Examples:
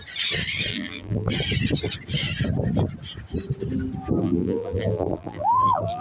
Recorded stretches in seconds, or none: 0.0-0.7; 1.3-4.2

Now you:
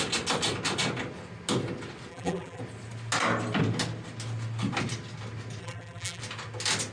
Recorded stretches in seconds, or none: 0.0-2.1; 2.6-5.6; 6.2-6.9

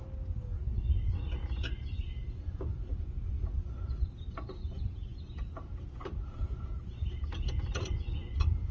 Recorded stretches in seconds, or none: 0.0-8.7

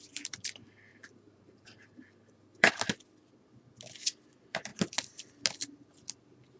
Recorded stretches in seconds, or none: 0.0-0.9; 2.7-6.6

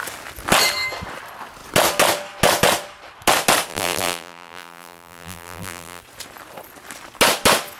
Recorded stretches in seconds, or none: 0.0-3.7; 6.0-7.8